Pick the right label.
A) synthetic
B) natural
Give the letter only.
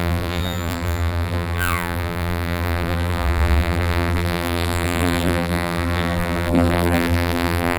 A